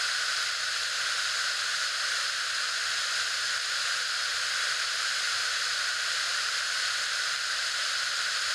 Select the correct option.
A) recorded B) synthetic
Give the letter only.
A